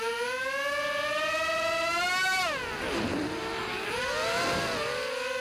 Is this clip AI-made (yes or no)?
no